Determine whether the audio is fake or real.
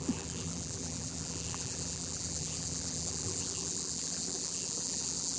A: fake